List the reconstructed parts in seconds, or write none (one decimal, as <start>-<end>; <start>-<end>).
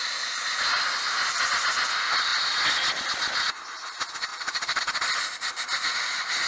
4.3-4.8